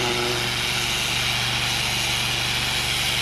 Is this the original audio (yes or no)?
yes